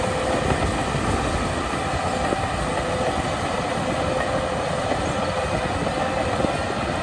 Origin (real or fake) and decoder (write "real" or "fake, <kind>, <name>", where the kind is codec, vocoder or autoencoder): real